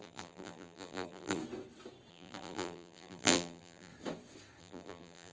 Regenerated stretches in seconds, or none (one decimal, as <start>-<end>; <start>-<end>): 0.0-1.4; 2.1-3.9; 4.6-5.3